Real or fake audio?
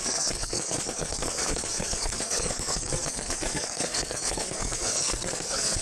fake